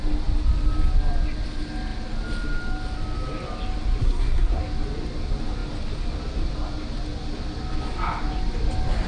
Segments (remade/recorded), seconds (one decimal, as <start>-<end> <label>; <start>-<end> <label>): 0.0-4.0 recorded; 4.0-4.6 remade; 4.6-9.1 recorded

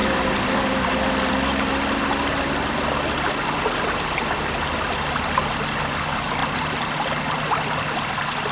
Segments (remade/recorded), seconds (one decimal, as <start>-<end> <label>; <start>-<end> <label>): 0.0-8.5 recorded

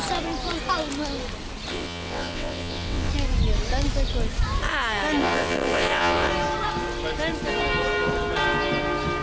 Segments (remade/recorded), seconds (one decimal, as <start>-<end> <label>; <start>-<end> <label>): 0.0-1.7 recorded; 1.7-3.1 remade; 3.1-5.2 recorded; 5.2-6.3 remade; 6.3-9.2 recorded

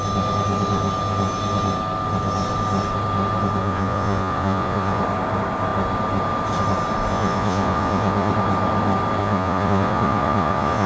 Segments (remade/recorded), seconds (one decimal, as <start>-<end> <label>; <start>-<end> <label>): 0.0-3.6 recorded; 3.6-5.0 remade; 5.0-7.1 recorded; 7.1-8.3 remade; 8.3-9.2 recorded; 9.2-10.9 remade

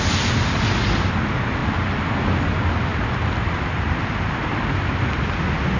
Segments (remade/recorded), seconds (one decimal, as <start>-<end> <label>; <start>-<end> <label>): 0.0-5.8 recorded